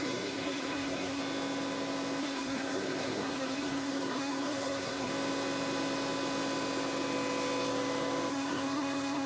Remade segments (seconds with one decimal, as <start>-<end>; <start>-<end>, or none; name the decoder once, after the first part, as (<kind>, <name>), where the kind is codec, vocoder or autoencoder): 0.0-1.2 (codec, SNAC); 2.2-5.1; 8.3-9.3